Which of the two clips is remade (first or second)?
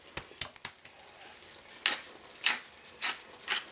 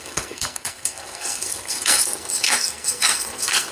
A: second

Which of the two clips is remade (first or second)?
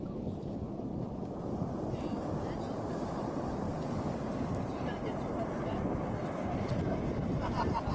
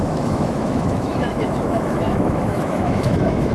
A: second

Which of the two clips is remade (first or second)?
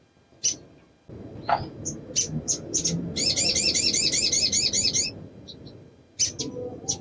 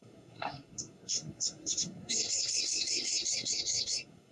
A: second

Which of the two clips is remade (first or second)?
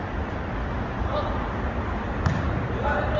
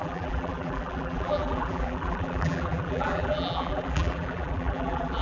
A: second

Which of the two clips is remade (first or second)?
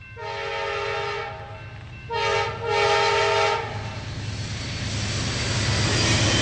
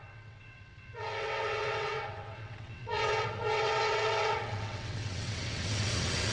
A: second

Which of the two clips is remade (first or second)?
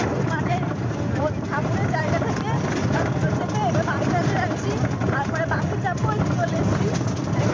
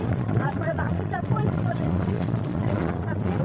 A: second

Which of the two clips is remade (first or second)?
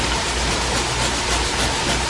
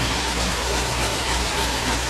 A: second